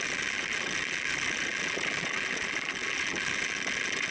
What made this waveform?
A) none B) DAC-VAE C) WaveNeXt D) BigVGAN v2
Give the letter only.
D